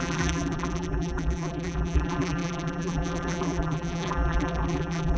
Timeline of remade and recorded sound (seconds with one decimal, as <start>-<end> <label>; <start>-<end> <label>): 0.0-5.2 remade